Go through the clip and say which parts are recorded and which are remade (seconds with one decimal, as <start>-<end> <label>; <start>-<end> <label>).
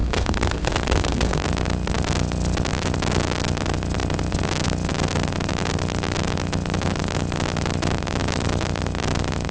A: 0.0-1.4 remade; 1.4-9.5 recorded